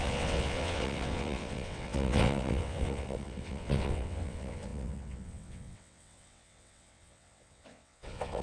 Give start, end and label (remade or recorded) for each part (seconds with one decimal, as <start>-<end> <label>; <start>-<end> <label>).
0.0-8.4 remade